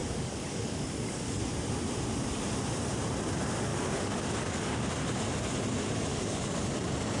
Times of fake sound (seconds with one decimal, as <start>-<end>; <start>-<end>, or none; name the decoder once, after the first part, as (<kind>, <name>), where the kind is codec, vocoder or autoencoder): 0.0-1.4 (codec, DAC); 3.7-5.1; 6.1-6.7

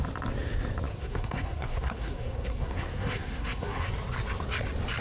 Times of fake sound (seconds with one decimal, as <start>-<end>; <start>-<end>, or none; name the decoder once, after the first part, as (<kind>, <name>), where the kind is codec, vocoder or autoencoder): 0.9-3.9 (codec, SNAC)

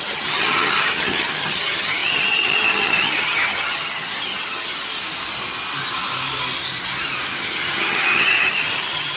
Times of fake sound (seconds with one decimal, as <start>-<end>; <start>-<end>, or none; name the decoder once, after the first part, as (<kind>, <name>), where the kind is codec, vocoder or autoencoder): 0.0-4.7 (vocoder, HiFi-GAN); 7.4-9.2

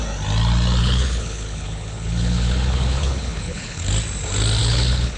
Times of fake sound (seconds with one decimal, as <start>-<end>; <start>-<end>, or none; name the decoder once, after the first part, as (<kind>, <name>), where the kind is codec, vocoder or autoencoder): 0.8-3.9 (codec, HILCodec); 4.6-5.2